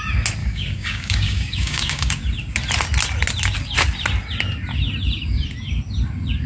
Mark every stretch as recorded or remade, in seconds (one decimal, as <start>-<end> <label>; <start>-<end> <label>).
0.0-0.4 recorded; 0.4-2.2 remade; 2.2-6.5 recorded